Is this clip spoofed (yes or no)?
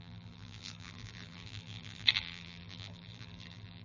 yes